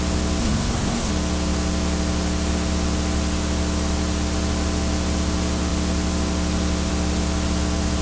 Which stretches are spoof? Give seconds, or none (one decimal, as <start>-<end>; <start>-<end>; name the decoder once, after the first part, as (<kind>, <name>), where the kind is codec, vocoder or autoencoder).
0.4-1.1 (codec, SNAC)